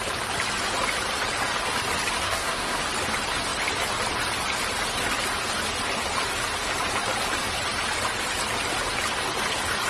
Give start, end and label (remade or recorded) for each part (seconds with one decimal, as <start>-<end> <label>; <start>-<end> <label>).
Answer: 0.0-2.2 recorded; 2.2-2.8 remade; 2.8-9.9 recorded